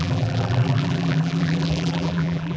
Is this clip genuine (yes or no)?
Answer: no